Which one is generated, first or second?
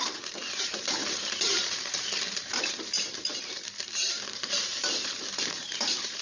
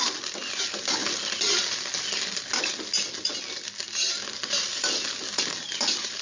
first